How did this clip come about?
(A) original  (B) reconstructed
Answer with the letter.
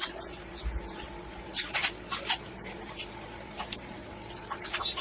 A